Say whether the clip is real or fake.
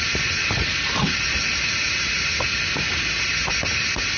real